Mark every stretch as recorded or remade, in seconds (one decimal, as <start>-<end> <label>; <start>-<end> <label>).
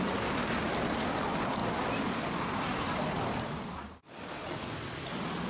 0.0-5.5 recorded